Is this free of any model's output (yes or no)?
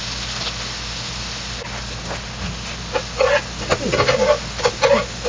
yes